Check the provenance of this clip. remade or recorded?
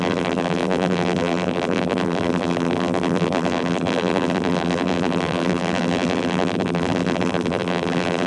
remade